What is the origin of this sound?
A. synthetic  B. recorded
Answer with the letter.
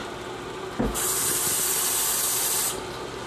B